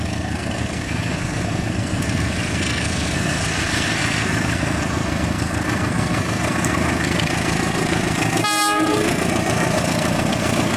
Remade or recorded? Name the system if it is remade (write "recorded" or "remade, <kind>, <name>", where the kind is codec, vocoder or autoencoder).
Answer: remade, codec, SNAC